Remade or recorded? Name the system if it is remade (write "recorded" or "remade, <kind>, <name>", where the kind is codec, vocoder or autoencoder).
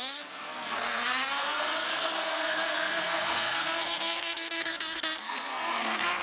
remade, codec, SNAC